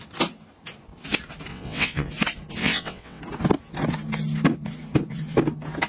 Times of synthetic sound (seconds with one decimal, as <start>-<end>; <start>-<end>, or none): 1.5-2.1; 2.6-3.2